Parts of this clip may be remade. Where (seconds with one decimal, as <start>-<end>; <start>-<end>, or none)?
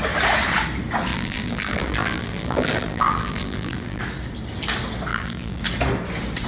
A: 1.1-4.0; 5.1-5.6